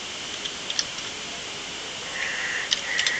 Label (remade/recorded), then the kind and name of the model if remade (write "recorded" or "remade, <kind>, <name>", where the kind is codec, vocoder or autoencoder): recorded